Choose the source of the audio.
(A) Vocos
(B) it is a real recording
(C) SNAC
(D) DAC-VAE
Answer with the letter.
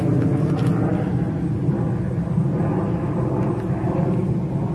B